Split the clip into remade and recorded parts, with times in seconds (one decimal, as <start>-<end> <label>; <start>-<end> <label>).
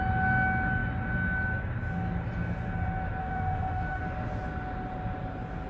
0.0-3.2 recorded; 3.2-4.0 remade; 4.0-5.7 recorded